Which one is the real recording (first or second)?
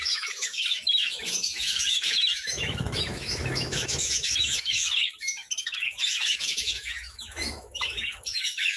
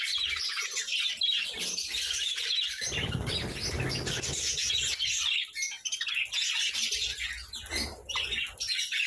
second